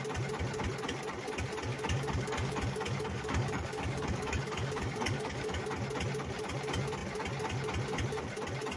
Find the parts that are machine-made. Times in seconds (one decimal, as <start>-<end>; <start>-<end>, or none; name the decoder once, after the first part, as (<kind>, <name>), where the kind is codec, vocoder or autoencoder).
1.7-5.6 (codec, DAC)